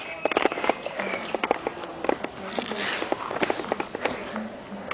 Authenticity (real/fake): real